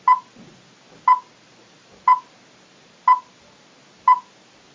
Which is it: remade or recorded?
remade